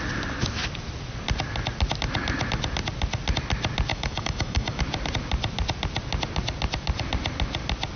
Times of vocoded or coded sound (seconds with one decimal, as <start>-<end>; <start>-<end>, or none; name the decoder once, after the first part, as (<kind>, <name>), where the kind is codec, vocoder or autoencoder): 3.9-4.8 (autoencoder, DAC-VAE)